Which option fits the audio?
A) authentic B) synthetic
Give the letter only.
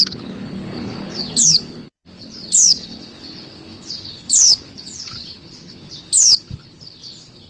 B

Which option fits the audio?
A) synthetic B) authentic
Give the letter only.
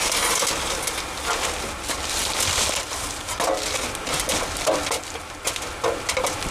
B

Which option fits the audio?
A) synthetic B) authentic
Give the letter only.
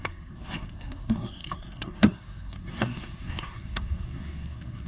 A